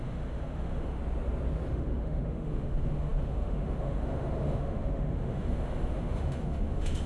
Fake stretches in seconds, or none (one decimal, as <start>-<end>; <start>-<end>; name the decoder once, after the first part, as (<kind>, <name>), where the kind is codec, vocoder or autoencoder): 0.0-1.0 (autoencoder, DAC-VAE); 1.7-7.1

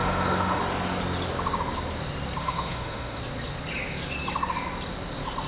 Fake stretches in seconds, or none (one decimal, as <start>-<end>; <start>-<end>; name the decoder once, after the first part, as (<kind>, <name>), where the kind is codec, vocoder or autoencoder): 0.0-0.6 (autoencoder, DAC-VAE); 2.4-3.2